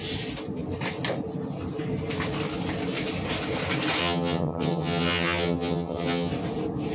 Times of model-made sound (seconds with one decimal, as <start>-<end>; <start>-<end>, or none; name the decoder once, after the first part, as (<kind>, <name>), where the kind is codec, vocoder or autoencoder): 4.0-6.3 (vocoder, HiFi-GAN)